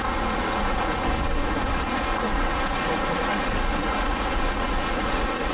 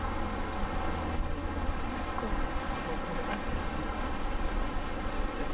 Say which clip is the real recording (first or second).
second